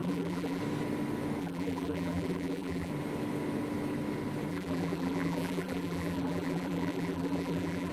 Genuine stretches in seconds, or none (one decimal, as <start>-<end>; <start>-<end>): 0.6-1.4; 2.9-4.5